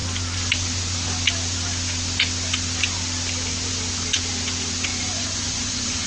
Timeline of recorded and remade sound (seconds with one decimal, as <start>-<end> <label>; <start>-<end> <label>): 0.0-4.9 recorded; 4.9-6.1 remade